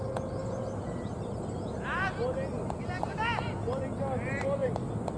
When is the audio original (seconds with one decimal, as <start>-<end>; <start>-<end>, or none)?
0.0-5.2